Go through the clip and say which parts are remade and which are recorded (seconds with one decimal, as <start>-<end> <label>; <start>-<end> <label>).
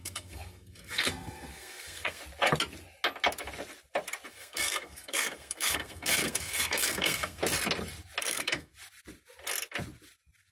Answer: 0.0-2.2 remade; 2.2-4.3 recorded; 4.3-7.4 remade; 7.4-8.2 recorded; 8.2-8.7 remade; 8.7-10.5 recorded